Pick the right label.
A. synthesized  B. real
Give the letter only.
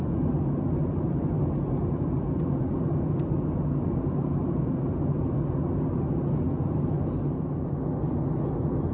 B